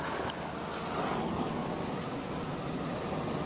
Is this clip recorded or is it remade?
recorded